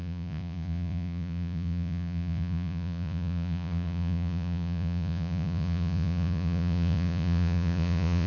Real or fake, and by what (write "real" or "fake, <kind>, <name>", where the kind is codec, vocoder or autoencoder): fake, vocoder, Vocos